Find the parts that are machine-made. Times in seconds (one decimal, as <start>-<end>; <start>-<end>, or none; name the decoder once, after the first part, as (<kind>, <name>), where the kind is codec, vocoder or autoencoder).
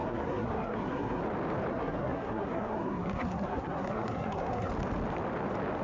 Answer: 0.0-1.2 (codec, SNAC); 1.7-4.7